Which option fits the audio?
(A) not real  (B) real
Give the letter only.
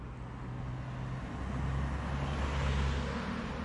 B